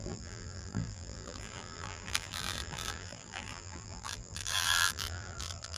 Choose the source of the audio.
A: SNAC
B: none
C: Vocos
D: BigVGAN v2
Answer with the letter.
D